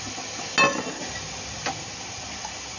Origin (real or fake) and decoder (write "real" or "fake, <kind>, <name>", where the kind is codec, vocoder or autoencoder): real